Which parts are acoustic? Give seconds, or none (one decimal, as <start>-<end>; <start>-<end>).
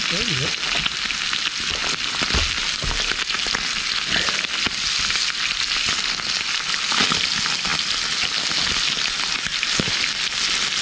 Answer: 0.0-10.8